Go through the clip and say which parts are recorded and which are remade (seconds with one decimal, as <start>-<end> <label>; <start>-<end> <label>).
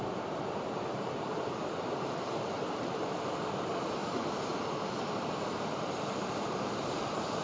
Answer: 0.0-4.0 remade; 4.0-5.6 recorded; 5.6-7.4 remade